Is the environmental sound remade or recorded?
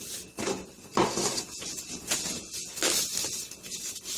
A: recorded